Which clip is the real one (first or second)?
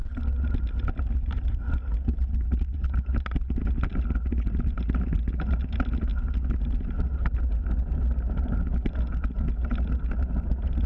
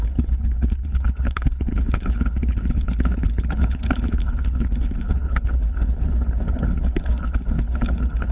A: first